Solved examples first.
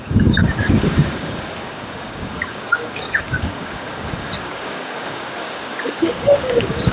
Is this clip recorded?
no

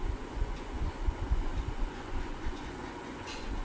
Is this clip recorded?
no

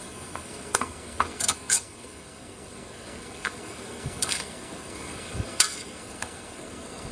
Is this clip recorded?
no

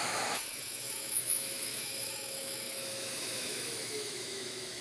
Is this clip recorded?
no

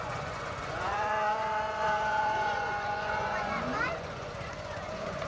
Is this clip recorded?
no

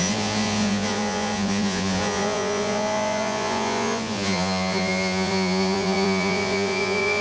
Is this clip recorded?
no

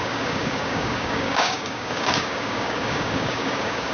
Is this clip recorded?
no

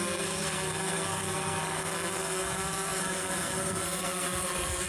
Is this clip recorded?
no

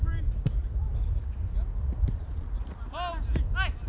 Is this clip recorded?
yes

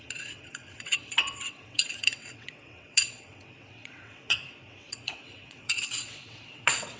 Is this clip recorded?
no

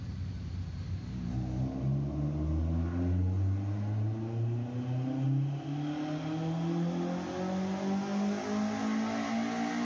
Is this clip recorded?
yes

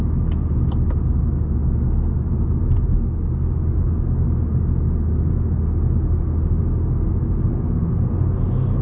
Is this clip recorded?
yes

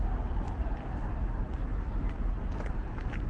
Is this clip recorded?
yes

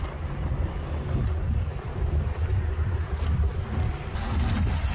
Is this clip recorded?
yes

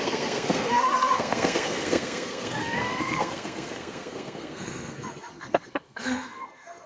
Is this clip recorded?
no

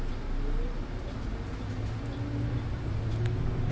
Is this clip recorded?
yes